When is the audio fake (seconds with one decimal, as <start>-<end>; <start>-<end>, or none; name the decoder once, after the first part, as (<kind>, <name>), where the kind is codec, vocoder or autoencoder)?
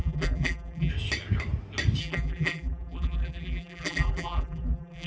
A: 0.0-0.9 (vocoder, BigVGAN v2); 2.0-5.1